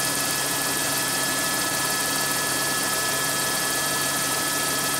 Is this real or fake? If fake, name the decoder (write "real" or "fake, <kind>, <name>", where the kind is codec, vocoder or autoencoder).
fake, vocoder, BigVGAN v2